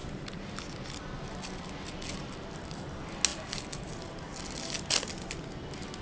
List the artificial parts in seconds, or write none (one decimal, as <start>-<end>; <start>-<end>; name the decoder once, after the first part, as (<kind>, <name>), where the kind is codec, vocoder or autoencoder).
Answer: none